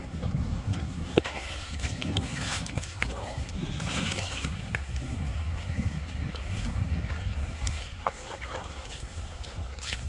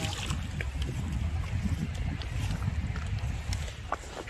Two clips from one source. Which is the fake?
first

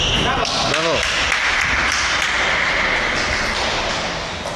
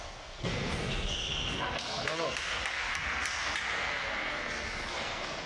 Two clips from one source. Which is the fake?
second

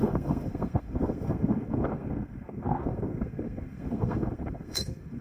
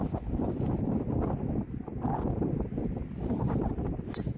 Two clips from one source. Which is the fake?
first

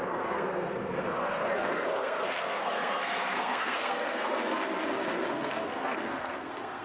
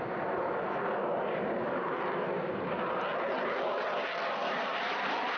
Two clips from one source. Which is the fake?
first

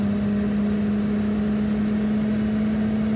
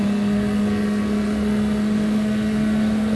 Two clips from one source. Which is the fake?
second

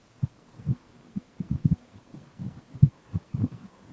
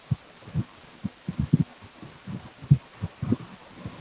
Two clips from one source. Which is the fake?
first